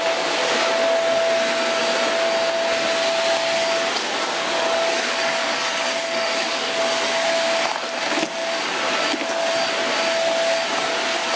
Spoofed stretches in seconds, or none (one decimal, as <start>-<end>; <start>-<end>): 4.4-6.8